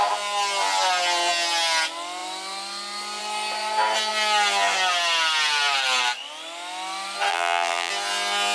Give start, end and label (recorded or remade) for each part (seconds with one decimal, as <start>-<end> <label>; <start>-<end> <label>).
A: 0.0-7.3 recorded; 7.3-7.9 remade; 7.9-8.5 recorded